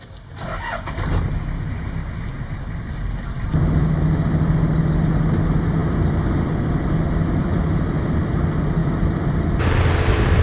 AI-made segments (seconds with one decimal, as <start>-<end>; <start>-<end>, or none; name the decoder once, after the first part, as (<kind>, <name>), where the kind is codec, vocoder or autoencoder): none